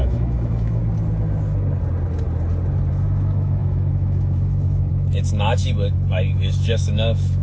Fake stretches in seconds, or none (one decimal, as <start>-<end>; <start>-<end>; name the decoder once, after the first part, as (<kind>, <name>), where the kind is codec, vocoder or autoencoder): 0.0-0.8 (autoencoder, DAC-VAE); 2.9-7.4